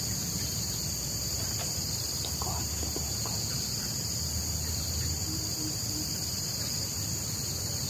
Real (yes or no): no